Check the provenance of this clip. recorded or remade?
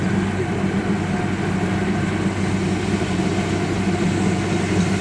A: recorded